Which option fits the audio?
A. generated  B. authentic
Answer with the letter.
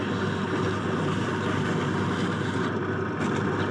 B